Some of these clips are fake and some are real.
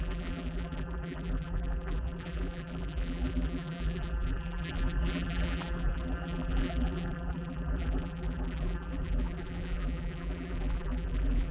fake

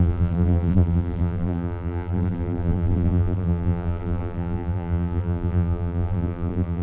fake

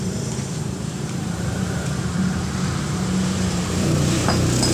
fake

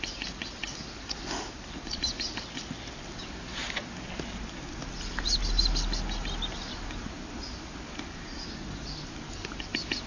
real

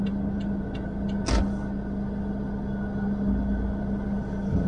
real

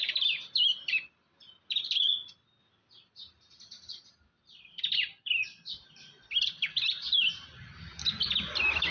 fake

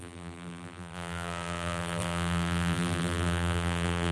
fake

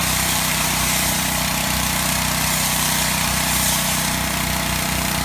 fake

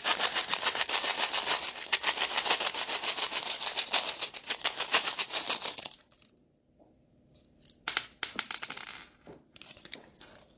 fake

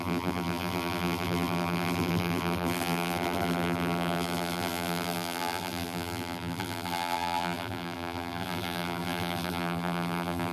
fake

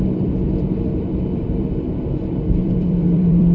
fake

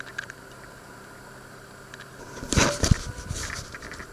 fake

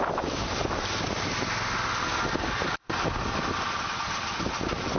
real